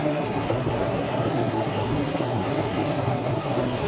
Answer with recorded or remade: remade